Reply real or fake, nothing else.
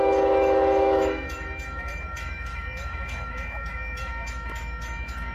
fake